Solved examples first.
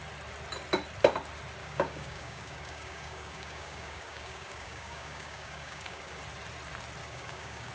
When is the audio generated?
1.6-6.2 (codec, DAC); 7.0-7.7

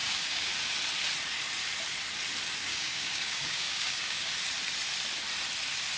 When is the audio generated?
0.0-0.5 (codec, DAC); 2.6-4.3